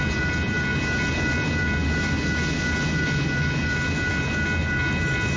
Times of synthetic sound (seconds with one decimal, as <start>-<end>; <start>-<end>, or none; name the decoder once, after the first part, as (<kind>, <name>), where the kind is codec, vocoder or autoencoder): none